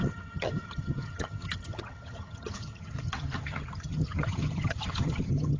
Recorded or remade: remade